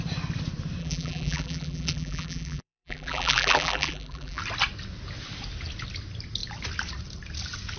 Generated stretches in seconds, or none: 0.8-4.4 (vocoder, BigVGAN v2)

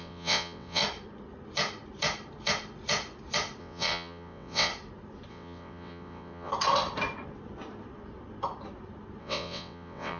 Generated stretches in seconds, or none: 0.0-0.8 (vocoder, WaveNeXt); 3.6-4.7; 5.3-6.5; 9.2-10.2

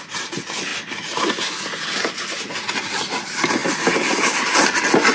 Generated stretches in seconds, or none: none